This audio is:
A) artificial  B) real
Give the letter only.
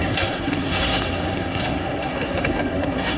A